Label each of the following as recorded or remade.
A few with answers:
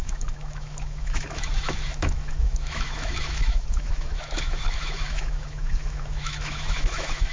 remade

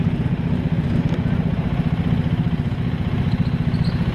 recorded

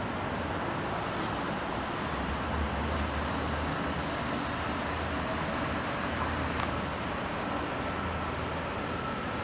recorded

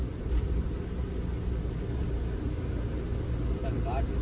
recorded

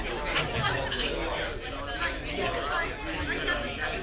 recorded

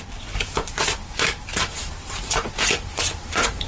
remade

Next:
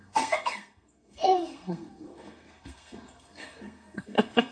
remade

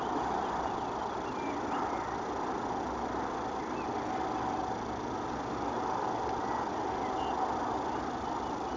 recorded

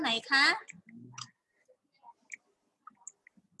recorded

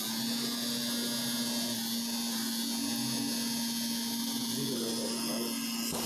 recorded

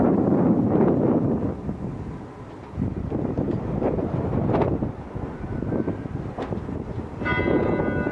recorded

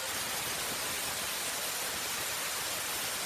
recorded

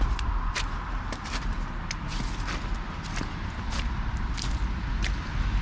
recorded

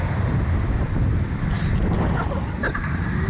recorded